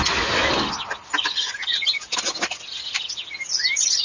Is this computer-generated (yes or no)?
no